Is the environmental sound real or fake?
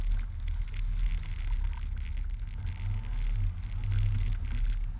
real